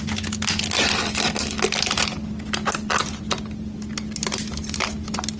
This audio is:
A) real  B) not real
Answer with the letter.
A